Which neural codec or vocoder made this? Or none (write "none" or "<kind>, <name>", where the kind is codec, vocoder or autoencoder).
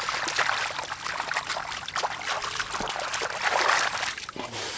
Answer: none